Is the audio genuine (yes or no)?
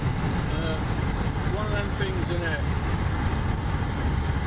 yes